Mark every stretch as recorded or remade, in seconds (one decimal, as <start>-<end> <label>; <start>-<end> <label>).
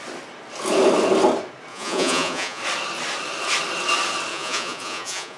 0.0-1.7 recorded; 1.7-2.6 remade; 2.6-4.3 recorded; 4.3-5.4 remade